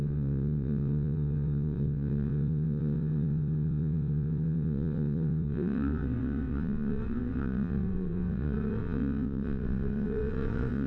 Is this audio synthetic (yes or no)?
yes